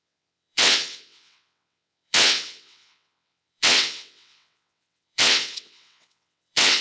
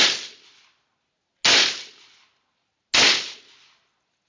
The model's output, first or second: first